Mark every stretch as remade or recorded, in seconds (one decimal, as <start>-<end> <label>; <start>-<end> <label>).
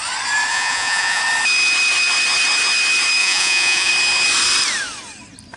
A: 0.0-0.5 recorded; 0.5-1.2 remade; 1.2-3.2 recorded; 3.2-3.9 remade; 3.9-5.6 recorded